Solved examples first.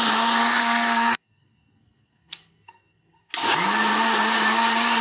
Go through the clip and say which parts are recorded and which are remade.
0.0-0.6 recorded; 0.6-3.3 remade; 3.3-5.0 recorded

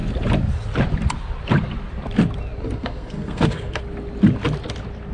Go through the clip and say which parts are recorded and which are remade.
0.0-2.6 recorded; 2.6-3.8 remade; 3.8-5.1 recorded

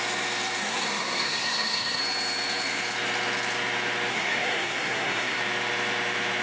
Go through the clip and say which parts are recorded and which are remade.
0.0-0.6 recorded; 0.6-2.0 remade; 2.0-4.1 recorded; 4.1-5.4 remade; 5.4-6.4 recorded

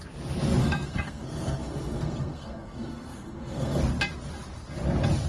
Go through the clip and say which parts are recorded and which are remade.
0.0-0.6 recorded; 0.6-3.8 remade; 3.8-5.3 recorded

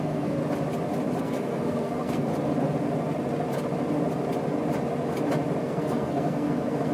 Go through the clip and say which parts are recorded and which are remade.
0.0-0.4 remade; 0.4-1.2 recorded; 1.2-2.3 remade; 2.3-5.6 recorded; 5.6-6.9 remade

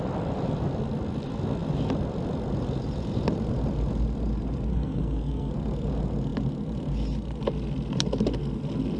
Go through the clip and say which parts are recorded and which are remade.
0.0-4.7 recorded; 4.7-5.5 remade; 5.5-9.0 recorded

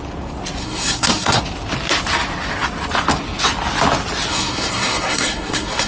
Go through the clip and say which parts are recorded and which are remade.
0.0-0.6 recorded; 0.6-1.4 remade; 1.4-4.3 recorded; 4.3-5.9 remade

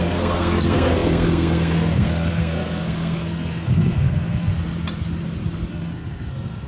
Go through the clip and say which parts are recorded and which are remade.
0.0-4.5 remade; 4.5-5.7 recorded; 5.7-6.7 remade